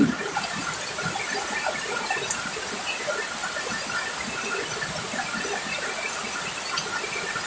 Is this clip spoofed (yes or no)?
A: no